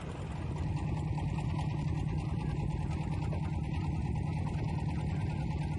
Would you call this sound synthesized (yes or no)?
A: no